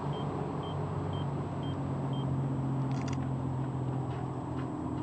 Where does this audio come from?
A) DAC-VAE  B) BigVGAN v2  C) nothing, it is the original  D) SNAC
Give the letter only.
C